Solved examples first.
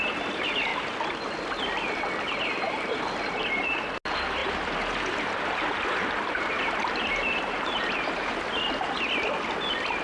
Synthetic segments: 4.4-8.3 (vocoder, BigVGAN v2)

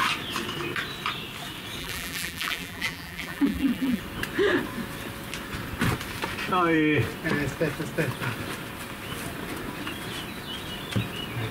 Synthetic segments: 1.8-4.0 (vocoder, BigVGAN v2)

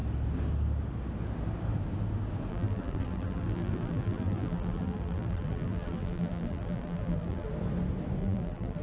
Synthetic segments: 2.5-7.5 (vocoder, BigVGAN v2); 8.2-8.8

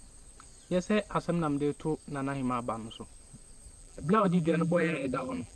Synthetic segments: 3.8-5.6 (vocoder, BigVGAN v2)

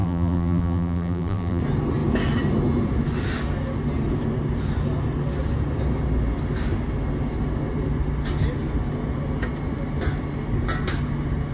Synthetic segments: 0.0-1.6 (vocoder, BigVGAN v2)